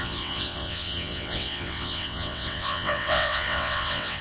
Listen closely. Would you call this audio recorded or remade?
remade